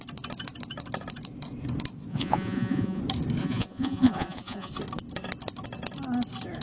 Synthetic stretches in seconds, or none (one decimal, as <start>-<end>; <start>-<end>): 2.1-3.0; 3.4-4.7